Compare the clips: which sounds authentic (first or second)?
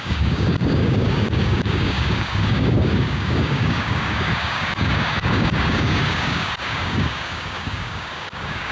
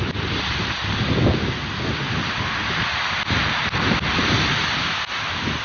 second